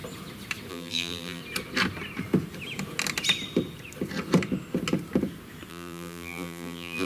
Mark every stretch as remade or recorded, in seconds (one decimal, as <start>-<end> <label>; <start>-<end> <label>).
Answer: 0.0-0.7 recorded; 0.7-1.4 remade; 1.4-5.7 recorded; 5.7-7.1 remade